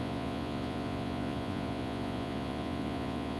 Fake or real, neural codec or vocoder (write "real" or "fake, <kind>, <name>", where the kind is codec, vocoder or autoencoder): fake, vocoder, Vocos